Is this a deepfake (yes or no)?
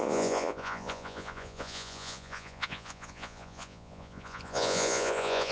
yes